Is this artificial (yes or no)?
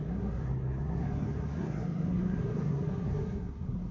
yes